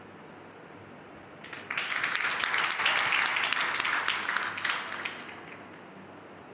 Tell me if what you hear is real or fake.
real